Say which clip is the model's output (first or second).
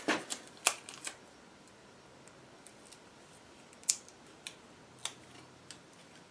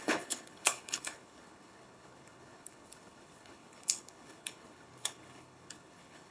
second